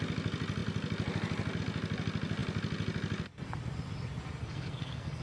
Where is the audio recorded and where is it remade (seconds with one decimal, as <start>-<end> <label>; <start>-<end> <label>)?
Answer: 0.0-4.4 recorded; 4.4-5.2 remade